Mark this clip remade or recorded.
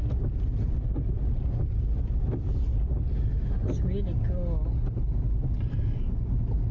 recorded